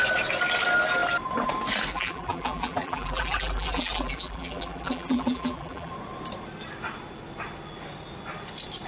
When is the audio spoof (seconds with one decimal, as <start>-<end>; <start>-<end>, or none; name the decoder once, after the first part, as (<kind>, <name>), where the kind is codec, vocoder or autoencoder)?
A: 1.9-5.9 (vocoder, BigVGAN v2)